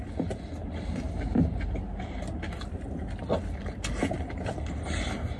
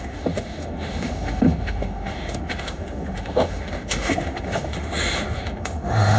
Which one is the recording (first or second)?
first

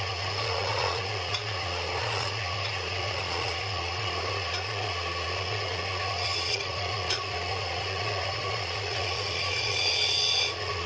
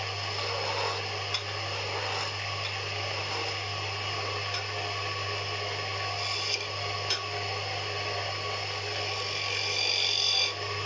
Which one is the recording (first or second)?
second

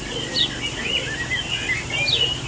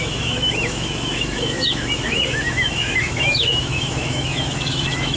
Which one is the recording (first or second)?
first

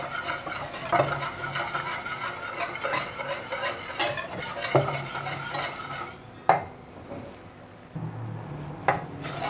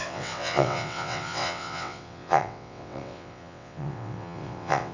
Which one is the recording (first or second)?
first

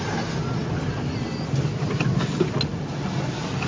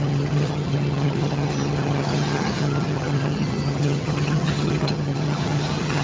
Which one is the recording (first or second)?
first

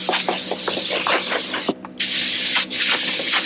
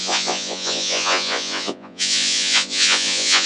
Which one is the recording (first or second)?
first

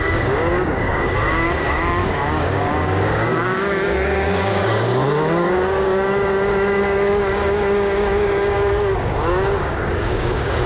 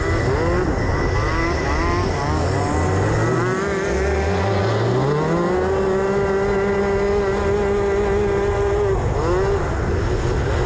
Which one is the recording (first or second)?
second